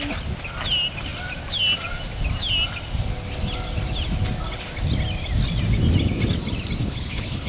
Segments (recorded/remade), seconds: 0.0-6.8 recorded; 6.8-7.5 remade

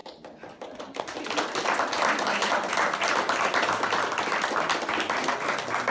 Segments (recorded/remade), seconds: 0.0-5.9 recorded

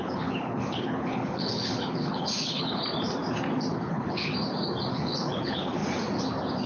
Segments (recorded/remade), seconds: 0.0-2.8 remade; 2.8-3.7 recorded; 3.7-4.3 remade; 4.3-4.9 recorded; 4.9-5.8 remade; 5.8-6.7 recorded

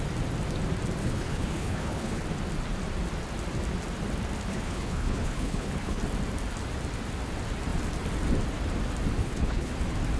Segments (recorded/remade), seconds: 0.0-1.0 recorded; 1.0-2.2 remade; 2.2-4.5 recorded; 4.5-6.0 remade; 6.0-9.2 recorded; 9.2-9.7 remade; 9.7-10.2 recorded